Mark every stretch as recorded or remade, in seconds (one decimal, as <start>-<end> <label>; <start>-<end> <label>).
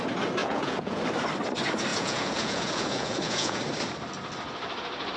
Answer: 0.0-0.4 recorded; 0.4-1.0 remade; 1.0-1.9 recorded; 1.9-3.6 remade; 3.6-5.2 recorded